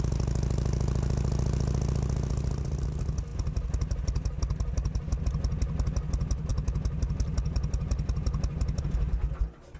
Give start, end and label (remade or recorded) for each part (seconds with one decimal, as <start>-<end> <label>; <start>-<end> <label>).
0.0-9.8 recorded